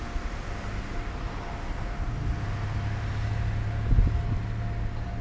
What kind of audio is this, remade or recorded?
recorded